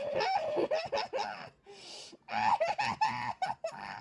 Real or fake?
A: real